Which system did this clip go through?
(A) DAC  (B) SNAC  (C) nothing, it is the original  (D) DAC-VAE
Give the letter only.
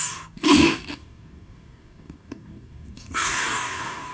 A